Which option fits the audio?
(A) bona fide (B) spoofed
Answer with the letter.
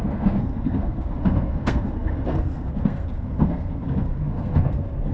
B